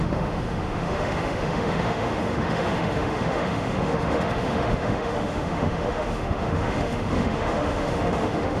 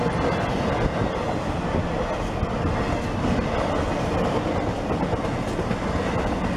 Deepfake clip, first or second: first